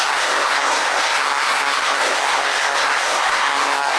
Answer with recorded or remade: remade